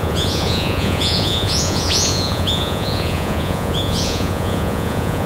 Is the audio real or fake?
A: fake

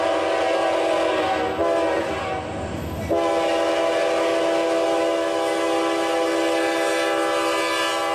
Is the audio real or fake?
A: real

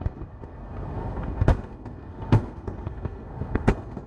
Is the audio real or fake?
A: fake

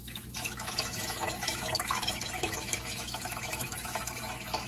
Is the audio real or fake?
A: fake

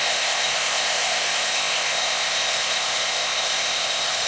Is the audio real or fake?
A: fake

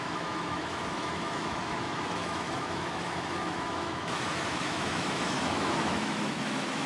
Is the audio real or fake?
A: fake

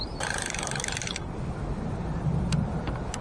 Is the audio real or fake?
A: real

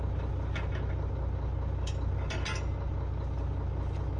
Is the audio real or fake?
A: real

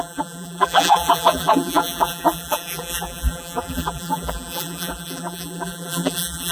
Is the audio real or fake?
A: fake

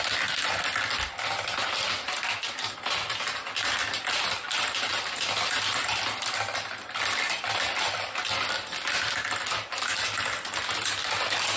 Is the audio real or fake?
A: real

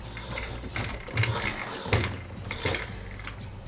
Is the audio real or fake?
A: real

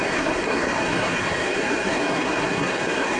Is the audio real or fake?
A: fake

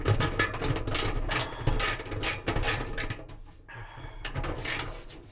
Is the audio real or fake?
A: real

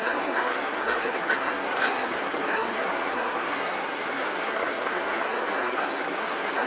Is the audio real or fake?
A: fake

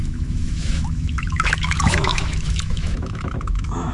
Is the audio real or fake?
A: fake